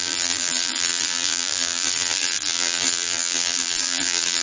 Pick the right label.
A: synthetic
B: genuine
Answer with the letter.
A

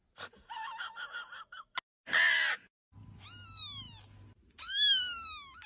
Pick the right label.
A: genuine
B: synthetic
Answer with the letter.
A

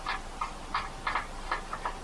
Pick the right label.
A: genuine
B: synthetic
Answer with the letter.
A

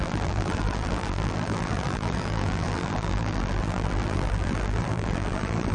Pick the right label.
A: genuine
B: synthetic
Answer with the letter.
B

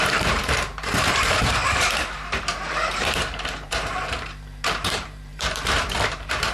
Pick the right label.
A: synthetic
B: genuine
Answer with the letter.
A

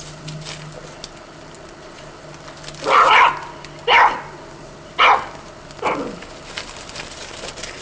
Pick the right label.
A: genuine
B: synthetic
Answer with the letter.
A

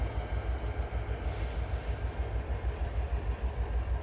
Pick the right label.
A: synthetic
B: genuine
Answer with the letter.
A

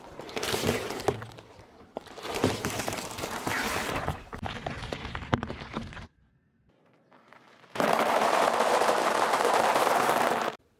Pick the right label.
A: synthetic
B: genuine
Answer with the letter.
A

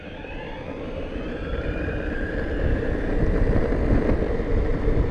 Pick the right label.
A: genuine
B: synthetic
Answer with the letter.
A